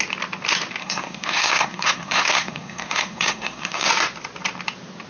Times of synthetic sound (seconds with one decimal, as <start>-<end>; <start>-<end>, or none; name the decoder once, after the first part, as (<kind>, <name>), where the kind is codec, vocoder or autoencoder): 0.8-3.9 (codec, SNAC)